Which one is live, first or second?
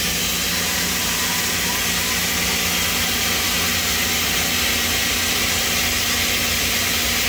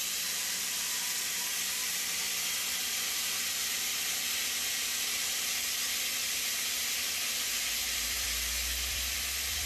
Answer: first